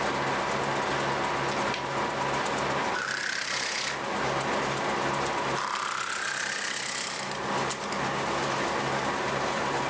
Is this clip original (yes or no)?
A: yes